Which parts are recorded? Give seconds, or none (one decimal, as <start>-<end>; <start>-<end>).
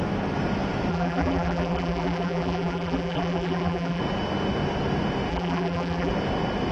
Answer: 0.0-0.9; 4.0-5.3; 6.1-6.7